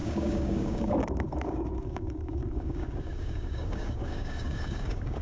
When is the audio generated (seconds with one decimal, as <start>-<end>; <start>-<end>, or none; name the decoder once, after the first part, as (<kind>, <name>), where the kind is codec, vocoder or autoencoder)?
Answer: 0.0-5.2 (codec, DAC)